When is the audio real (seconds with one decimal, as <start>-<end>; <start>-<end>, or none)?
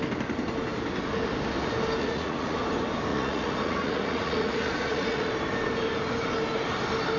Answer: 0.0-2.0; 2.6-3.1; 5.3-7.2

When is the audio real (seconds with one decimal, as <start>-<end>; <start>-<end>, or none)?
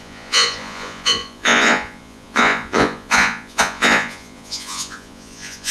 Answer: none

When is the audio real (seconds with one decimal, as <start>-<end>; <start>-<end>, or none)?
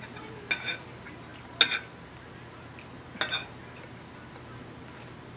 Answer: 0.0-5.4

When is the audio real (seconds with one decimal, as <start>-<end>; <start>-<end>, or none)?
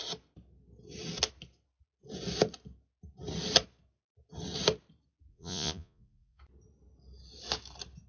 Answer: 0.0-5.3; 6.4-8.1